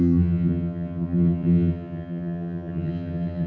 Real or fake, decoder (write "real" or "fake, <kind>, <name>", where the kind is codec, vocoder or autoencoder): fake, vocoder, HiFi-GAN